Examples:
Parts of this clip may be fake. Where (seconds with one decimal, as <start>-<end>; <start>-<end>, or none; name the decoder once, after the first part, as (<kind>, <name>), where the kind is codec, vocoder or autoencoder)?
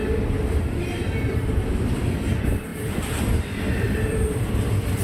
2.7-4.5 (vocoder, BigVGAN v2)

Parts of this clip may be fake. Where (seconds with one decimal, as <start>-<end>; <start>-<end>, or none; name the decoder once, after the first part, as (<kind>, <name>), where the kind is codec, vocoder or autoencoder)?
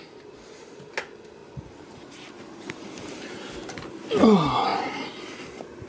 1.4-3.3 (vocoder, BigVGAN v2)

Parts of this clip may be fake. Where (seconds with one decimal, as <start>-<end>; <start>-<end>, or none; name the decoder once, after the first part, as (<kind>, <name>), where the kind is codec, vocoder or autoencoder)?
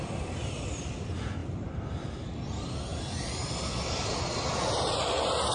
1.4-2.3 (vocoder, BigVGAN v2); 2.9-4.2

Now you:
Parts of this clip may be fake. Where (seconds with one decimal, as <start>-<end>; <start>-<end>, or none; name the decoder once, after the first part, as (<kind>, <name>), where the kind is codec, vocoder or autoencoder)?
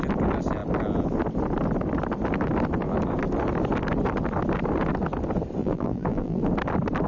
5.6-6.4 (vocoder, BigVGAN v2)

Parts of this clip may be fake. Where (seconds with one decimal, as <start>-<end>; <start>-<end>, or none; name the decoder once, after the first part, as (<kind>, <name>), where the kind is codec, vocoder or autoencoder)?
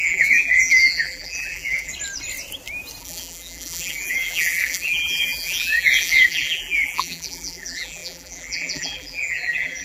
0.0-1.9 (vocoder, BigVGAN v2); 3.0-9.8